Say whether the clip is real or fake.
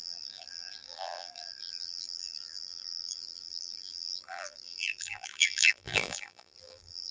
fake